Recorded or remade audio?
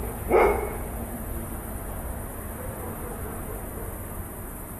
remade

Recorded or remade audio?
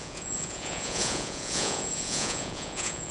remade